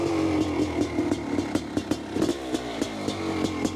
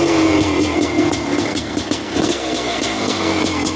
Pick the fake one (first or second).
second